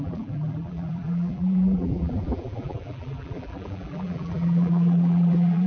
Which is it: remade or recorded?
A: remade